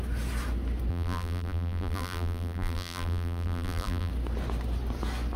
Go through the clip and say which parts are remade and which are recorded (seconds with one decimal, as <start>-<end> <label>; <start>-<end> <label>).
0.0-0.9 recorded; 0.9-4.1 remade; 4.1-5.4 recorded

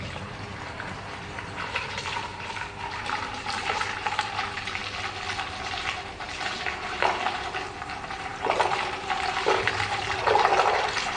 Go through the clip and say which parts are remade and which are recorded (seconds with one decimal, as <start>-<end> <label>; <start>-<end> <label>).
0.0-4.8 remade; 4.8-5.6 recorded; 5.6-11.2 remade